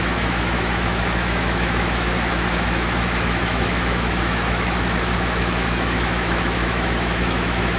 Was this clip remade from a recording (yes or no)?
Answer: yes